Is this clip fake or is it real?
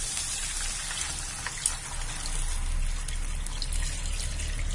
real